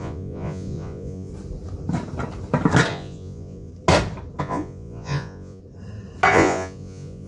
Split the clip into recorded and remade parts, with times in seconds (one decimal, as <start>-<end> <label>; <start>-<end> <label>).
0.0-1.3 remade; 1.3-2.9 recorded; 2.9-3.7 remade; 3.7-4.4 recorded; 4.4-5.6 remade; 5.6-6.3 recorded; 6.3-7.3 remade